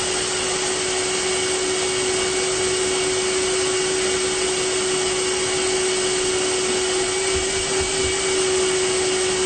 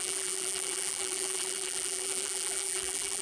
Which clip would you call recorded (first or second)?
first